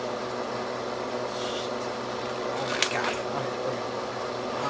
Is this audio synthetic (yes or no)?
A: no